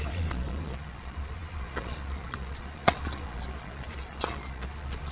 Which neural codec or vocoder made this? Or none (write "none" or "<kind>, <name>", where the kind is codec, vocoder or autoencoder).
vocoder, Vocos